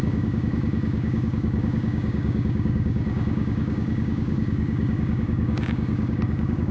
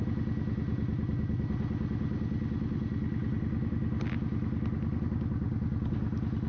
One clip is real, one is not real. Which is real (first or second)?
second